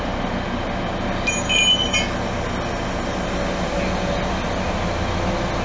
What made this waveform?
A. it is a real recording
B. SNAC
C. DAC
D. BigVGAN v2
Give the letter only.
A